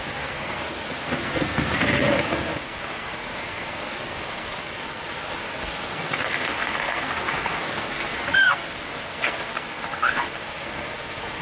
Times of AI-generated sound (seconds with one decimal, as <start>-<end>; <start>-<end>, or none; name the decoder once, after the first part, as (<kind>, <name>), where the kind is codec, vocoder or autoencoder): 0.0-11.4 (codec, SNAC)